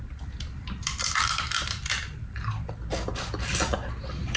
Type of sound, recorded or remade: recorded